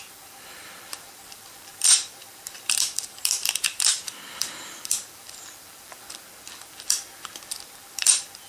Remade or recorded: remade